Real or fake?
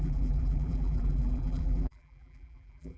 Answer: fake